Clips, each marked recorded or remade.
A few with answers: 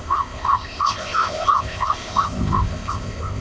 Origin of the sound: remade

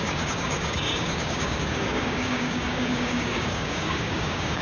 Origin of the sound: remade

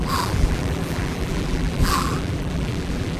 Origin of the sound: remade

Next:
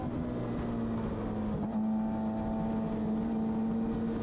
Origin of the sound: recorded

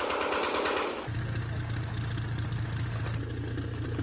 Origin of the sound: recorded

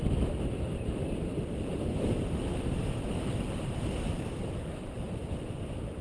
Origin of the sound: recorded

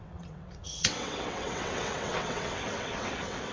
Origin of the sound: remade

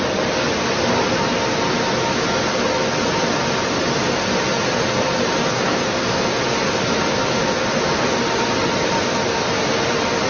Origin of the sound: recorded